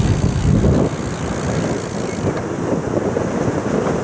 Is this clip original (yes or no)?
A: yes